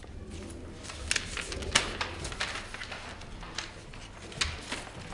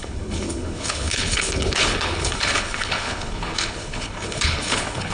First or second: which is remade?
second